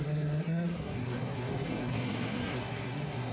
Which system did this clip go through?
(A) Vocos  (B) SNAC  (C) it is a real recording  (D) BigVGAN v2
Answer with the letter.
B